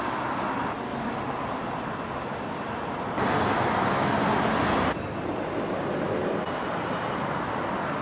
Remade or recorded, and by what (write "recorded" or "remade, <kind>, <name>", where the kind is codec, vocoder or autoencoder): recorded